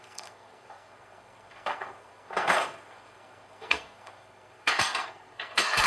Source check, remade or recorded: remade